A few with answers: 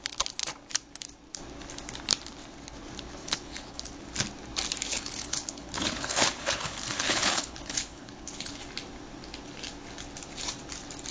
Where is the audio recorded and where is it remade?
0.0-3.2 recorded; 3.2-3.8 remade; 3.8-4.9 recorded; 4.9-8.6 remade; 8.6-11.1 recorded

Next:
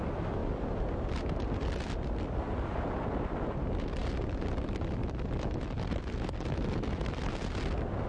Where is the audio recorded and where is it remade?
0.0-8.1 recorded

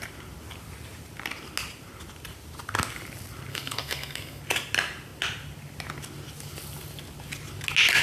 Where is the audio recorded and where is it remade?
0.0-3.5 recorded; 3.5-4.4 remade; 4.4-8.0 recorded

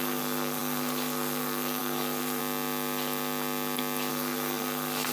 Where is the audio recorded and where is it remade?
0.0-2.4 remade; 2.4-4.1 recorded; 4.1-5.1 remade

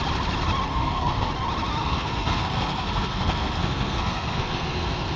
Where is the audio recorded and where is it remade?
0.0-0.7 recorded; 0.7-1.3 remade; 1.3-1.8 recorded; 1.8-5.2 remade

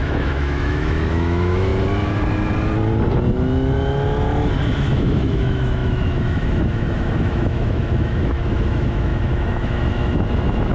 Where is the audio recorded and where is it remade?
0.0-1.7 remade; 1.7-4.7 recorded; 4.7-10.7 remade

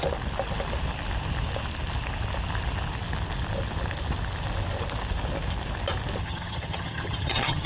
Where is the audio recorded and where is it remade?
0.0-6.2 recorded; 6.2-7.7 remade